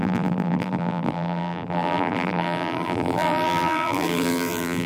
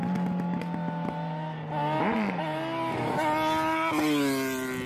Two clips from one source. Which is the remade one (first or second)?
first